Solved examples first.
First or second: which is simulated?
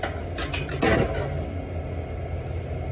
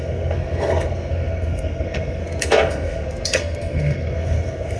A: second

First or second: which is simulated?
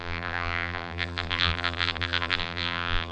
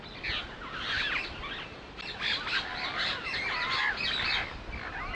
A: first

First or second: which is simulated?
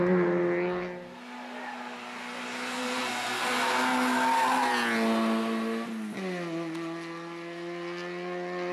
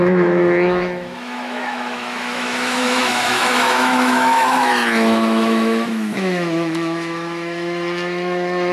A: second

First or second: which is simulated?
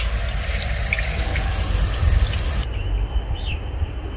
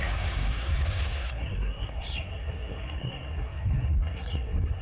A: second